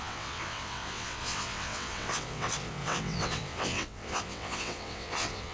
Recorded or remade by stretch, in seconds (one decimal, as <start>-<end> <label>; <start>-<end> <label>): 0.0-5.5 remade